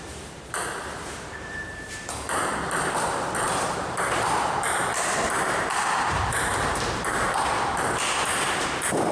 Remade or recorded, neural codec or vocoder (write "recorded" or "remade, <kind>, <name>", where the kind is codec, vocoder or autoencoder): remade, vocoder, BigVGAN v2